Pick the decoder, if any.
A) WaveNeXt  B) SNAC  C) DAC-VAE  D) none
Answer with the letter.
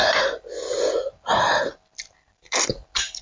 D